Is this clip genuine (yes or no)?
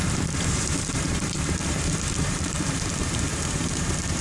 no